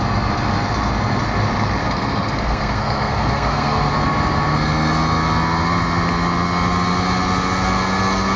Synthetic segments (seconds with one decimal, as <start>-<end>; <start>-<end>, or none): 1.8-3.9